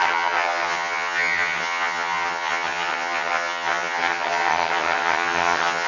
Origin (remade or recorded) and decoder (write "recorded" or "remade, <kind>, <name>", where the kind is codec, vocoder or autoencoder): remade, vocoder, HiFi-GAN